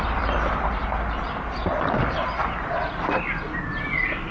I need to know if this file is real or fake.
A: real